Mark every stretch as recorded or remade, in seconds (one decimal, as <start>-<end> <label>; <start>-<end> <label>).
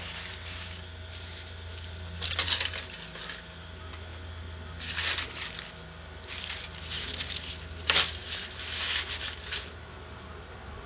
0.0-10.9 recorded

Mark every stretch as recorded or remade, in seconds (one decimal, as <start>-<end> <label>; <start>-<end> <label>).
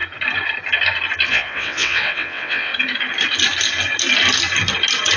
0.0-1.3 recorded; 1.3-2.7 remade; 2.7-5.2 recorded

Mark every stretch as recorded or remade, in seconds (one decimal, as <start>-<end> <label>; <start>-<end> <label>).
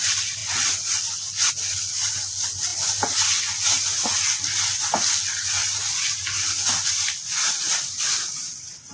0.0-8.9 recorded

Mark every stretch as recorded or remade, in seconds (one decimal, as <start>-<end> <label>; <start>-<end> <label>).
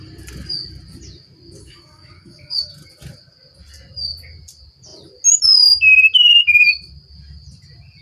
0.0-1.6 recorded; 1.6-2.7 remade; 2.7-8.0 recorded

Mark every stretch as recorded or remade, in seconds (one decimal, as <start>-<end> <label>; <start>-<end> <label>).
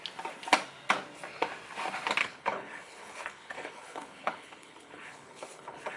0.0-2.2 recorded; 2.2-6.0 remade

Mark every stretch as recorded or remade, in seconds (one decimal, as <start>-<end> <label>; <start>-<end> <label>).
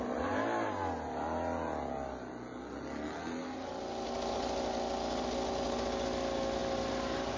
0.0-7.4 recorded